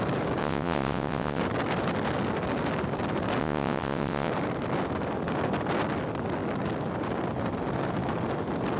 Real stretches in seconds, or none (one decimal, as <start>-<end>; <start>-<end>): 0.0-0.4; 1.4-3.4; 4.3-8.8